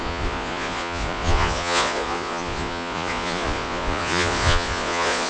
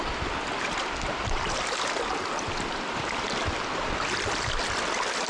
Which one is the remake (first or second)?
first